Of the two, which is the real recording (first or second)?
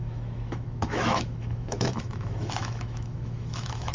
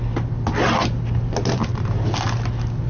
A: second